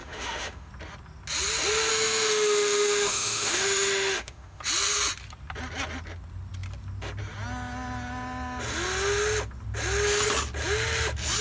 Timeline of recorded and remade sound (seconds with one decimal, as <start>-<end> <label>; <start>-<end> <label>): 0.0-0.7 remade; 0.7-1.9 recorded; 1.9-4.6 remade; 4.6-11.4 recorded